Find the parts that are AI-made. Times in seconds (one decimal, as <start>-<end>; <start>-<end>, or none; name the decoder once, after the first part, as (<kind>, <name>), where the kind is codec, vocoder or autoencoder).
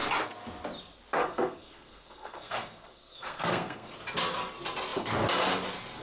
1.2-4.0 (codec, SNAC)